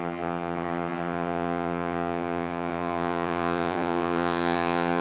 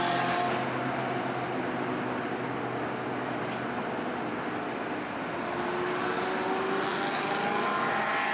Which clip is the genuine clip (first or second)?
second